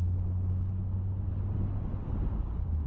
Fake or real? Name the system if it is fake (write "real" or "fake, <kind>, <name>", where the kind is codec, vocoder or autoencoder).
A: real